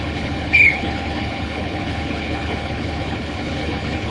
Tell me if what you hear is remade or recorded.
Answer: remade